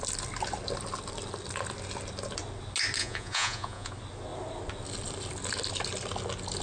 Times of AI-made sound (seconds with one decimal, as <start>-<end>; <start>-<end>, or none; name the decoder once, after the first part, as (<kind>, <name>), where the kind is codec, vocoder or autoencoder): 3.0-3.9 (vocoder, Vocos)